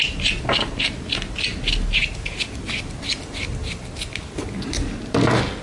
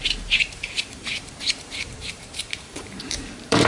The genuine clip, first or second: first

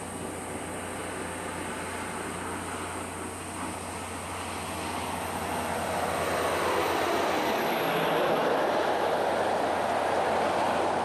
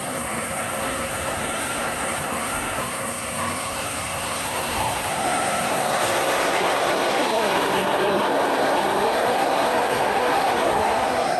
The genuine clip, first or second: first